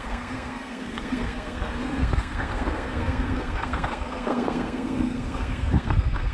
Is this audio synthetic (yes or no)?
yes